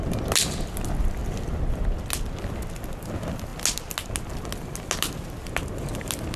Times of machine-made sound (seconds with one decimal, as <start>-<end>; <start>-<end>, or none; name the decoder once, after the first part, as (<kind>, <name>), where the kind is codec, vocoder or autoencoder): none